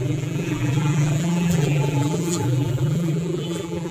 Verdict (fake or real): fake